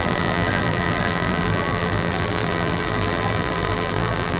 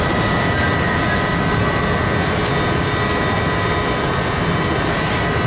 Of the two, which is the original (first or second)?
second